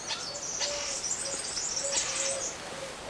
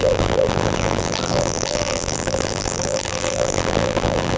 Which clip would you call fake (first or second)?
second